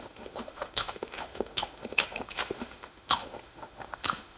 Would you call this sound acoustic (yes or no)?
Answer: no